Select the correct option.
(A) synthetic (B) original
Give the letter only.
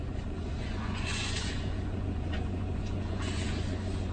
A